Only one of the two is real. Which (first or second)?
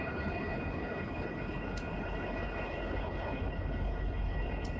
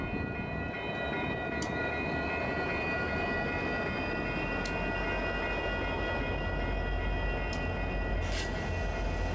second